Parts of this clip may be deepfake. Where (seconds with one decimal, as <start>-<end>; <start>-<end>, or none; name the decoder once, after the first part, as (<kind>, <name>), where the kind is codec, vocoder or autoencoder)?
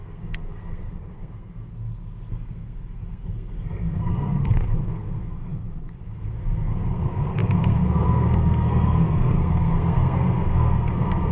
0.0-1.7 (codec, SNAC); 2.3-11.3